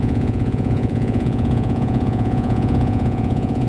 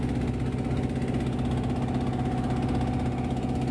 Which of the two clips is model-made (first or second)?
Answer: first